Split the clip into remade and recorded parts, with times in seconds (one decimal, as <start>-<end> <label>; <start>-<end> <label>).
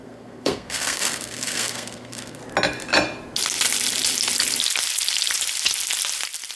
0.0-2.4 remade; 2.4-6.6 recorded